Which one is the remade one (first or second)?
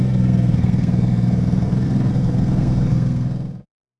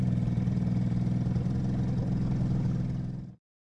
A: first